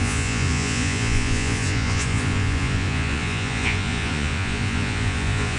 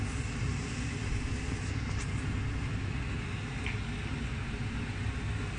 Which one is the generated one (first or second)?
first